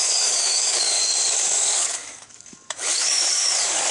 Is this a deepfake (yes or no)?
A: yes